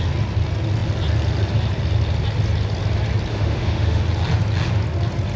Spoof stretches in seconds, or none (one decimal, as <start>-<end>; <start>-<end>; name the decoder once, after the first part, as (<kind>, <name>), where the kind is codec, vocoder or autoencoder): 3.3-4.0 (autoencoder, DAC-VAE)

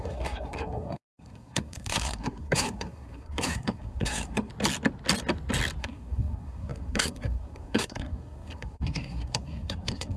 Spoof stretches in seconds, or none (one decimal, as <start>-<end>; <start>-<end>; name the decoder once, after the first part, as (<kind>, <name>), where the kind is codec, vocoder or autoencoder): 0.0-4.5 (codec, SNAC); 5.8-10.2

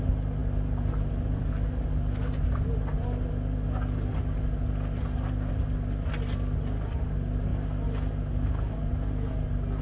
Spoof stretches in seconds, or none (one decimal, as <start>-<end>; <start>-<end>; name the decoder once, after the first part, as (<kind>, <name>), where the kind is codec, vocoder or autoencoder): none